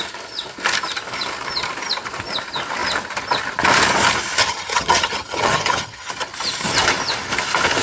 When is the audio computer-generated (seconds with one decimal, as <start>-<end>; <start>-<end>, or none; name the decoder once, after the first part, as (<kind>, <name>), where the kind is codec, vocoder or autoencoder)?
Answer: 4.4-6.1 (vocoder, HiFi-GAN)

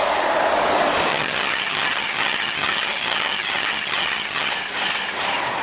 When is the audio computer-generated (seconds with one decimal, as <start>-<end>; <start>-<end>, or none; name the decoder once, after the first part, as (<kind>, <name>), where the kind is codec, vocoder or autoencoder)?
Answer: 1.1-4.5 (vocoder, HiFi-GAN)

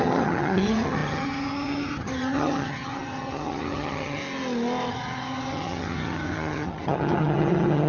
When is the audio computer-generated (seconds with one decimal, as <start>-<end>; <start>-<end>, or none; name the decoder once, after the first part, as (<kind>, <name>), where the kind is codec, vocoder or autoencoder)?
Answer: 0.0-4.2 (vocoder, HiFi-GAN); 4.9-7.9

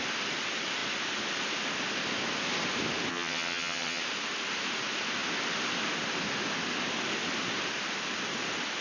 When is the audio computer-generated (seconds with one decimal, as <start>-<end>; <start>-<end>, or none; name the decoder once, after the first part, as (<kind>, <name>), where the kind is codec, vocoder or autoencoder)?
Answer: 3.1-4.0 (vocoder, HiFi-GAN)